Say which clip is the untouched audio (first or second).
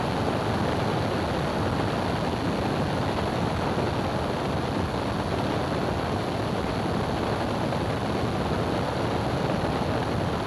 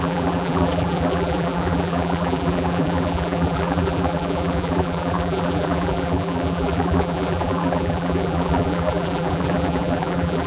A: first